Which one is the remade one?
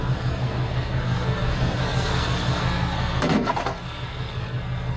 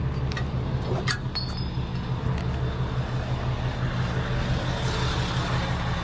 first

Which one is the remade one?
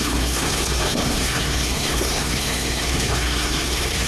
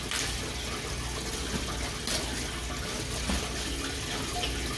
first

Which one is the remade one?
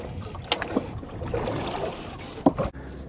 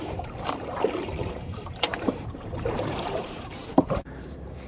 second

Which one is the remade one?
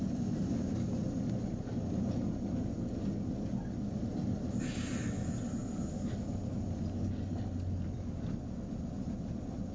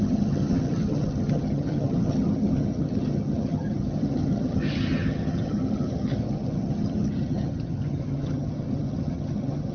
second